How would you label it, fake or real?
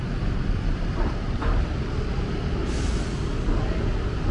real